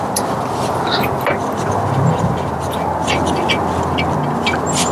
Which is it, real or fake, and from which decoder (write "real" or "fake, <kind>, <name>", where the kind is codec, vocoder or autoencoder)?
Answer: real